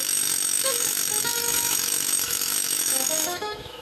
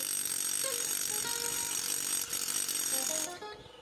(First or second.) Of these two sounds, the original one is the second